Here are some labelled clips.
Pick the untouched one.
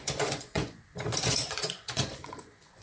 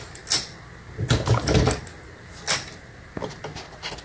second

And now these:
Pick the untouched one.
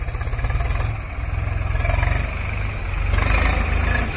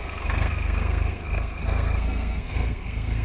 first